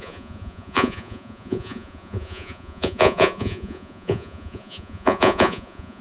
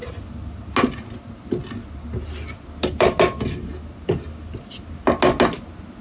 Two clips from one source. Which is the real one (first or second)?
second